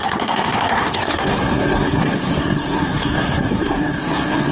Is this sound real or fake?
fake